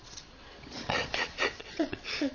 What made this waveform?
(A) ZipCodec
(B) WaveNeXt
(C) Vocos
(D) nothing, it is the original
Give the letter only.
C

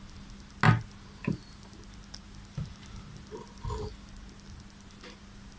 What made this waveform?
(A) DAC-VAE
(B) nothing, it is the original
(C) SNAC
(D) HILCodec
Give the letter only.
B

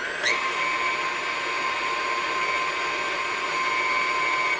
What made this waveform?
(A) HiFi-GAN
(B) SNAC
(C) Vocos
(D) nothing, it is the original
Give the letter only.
D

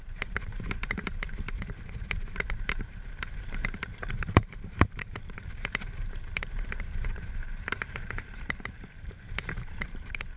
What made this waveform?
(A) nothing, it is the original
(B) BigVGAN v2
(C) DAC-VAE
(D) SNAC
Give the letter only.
B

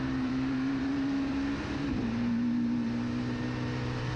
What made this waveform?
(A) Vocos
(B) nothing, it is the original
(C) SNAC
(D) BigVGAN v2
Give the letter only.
D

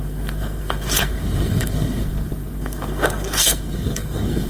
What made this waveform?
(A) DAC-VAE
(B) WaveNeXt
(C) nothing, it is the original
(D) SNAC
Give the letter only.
D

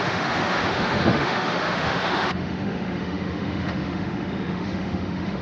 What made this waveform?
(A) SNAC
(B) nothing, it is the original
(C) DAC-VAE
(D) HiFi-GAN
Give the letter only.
C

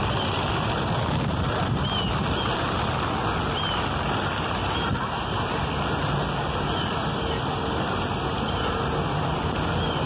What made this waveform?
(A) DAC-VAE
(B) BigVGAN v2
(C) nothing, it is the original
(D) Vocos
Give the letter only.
C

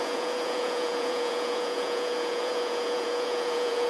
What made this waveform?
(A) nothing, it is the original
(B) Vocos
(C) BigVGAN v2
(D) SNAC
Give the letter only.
B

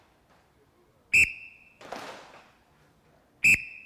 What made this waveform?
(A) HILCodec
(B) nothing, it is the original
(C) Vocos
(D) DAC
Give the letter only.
B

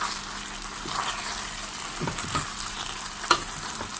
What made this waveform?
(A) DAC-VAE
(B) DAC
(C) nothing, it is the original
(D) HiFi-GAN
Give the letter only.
C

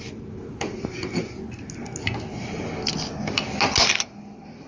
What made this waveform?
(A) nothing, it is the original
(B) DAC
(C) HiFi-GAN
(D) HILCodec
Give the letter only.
A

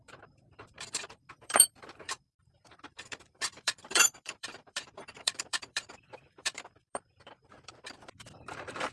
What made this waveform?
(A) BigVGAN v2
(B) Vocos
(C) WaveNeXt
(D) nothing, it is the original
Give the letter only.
A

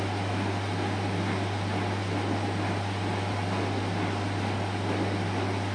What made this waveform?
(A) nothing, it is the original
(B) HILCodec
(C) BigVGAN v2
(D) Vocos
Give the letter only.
A